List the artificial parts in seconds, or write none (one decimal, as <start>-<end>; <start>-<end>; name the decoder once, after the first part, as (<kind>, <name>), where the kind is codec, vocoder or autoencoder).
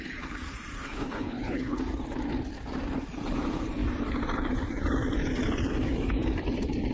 0.7-1.8 (codec, HILCodec)